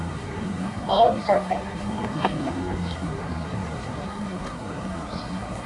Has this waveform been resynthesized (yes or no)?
yes